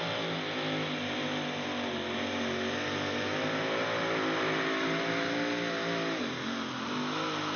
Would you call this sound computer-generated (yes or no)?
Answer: no